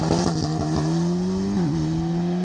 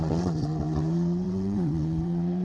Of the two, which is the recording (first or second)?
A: first